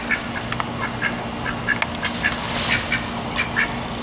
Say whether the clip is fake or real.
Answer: real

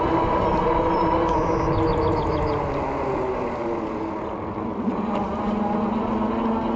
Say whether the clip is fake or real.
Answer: real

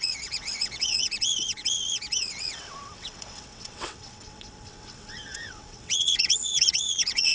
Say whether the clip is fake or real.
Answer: fake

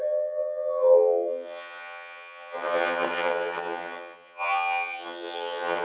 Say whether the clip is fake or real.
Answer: fake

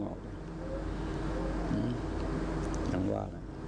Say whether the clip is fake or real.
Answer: real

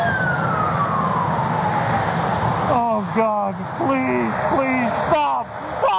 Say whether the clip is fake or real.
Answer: real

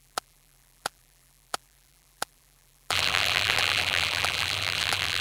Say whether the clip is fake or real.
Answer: fake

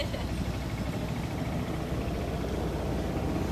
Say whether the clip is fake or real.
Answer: real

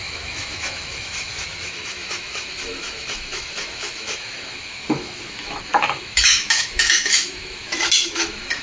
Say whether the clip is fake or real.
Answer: fake